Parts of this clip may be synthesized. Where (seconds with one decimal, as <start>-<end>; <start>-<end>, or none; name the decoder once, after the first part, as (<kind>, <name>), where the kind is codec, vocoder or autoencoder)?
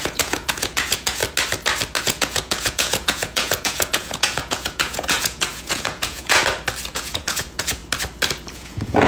0.0-1.2 (vocoder, Vocos); 2.0-6.4; 6.9-7.8; 8.5-9.1